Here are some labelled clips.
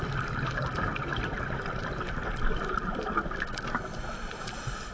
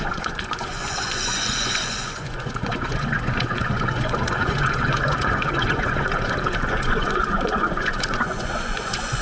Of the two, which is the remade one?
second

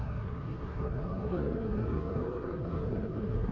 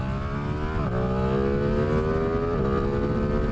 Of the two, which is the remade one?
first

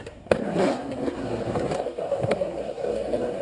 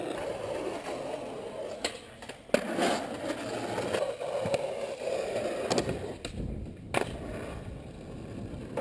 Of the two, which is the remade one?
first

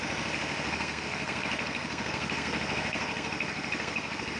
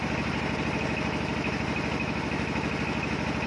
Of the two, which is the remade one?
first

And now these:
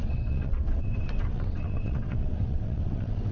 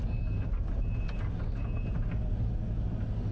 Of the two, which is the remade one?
first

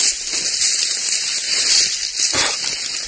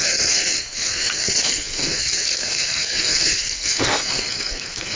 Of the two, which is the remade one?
second